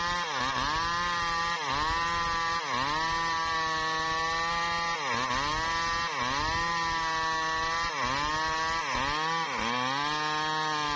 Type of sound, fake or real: real